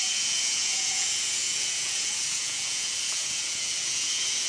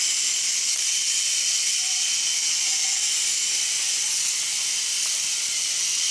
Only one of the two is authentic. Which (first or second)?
second